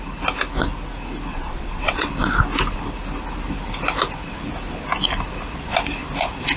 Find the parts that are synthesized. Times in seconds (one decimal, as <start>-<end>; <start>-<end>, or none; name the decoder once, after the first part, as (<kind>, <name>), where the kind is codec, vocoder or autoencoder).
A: 1.3-2.1 (vocoder, WaveNeXt)